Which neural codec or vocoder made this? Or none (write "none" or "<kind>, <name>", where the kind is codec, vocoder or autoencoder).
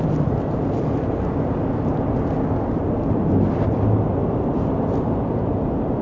none